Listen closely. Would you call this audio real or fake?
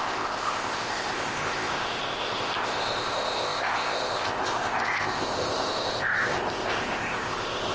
fake